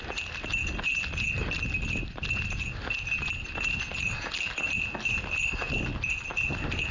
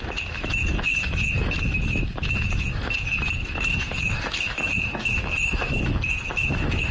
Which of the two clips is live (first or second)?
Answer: first